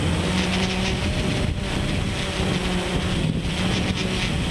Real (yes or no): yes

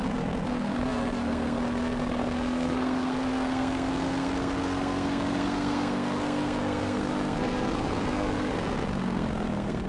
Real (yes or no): no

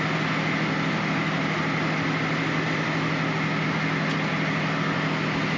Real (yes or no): yes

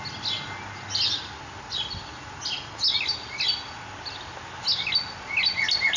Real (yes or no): yes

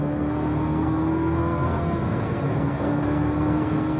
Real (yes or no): no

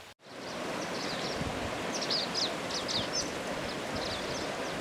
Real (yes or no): yes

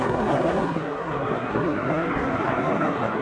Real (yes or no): no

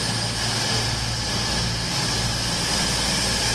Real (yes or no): yes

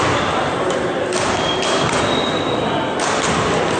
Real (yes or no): yes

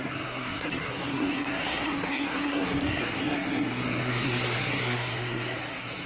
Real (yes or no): no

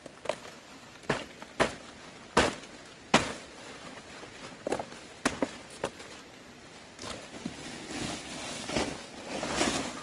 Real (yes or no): yes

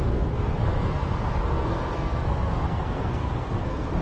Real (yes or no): no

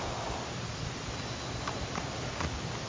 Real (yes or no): yes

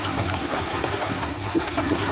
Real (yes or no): no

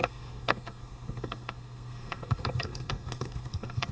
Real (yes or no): no